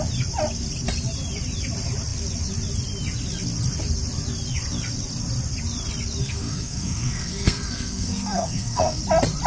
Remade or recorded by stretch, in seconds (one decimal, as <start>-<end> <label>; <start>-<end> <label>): 0.0-6.2 recorded; 6.2-9.0 remade; 9.0-9.5 recorded